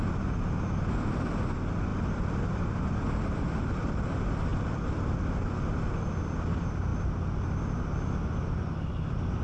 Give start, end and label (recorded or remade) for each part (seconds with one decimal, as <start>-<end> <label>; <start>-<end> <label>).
0.0-1.9 recorded; 1.9-3.8 remade; 3.8-4.5 recorded; 4.5-5.2 remade; 5.2-9.4 recorded